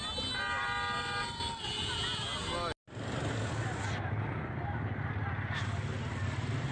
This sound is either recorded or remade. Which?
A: recorded